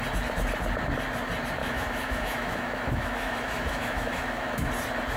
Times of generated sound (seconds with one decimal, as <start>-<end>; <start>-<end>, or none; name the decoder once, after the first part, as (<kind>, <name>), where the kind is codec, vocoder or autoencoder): 1.6-4.7 (autoencoder, DAC-VAE)